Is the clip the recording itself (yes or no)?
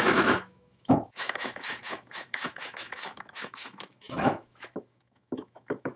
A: no